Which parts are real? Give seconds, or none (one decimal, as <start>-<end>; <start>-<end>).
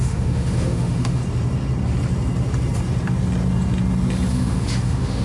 1.2-4.3